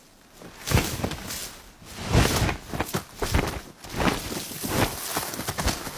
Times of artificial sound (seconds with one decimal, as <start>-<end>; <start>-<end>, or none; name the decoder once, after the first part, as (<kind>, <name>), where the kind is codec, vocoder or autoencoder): none